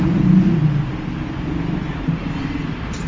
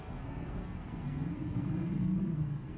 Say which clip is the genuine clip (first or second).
first